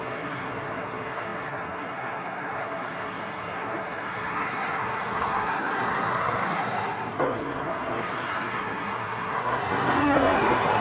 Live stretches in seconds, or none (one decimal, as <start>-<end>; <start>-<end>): none